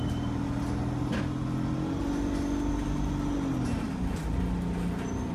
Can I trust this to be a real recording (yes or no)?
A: yes